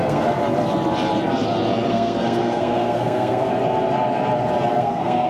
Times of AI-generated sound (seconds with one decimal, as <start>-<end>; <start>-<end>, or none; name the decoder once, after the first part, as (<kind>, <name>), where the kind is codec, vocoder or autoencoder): 0.0-0.4 (codec, SNAC); 1.9-3.5; 4.8-5.3